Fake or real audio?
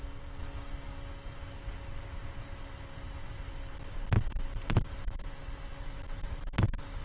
real